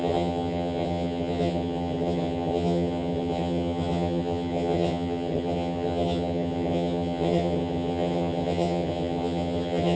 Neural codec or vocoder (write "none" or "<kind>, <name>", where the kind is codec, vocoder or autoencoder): vocoder, HiFi-GAN